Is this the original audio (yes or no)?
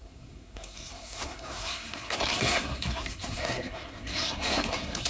no